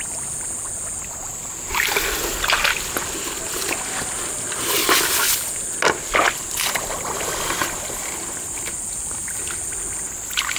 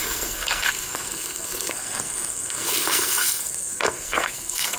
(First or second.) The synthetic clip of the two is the second